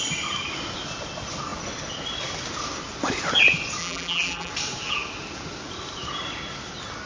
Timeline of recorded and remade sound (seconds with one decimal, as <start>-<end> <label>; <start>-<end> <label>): 0.0-3.8 recorded; 3.8-4.5 remade; 4.5-7.1 recorded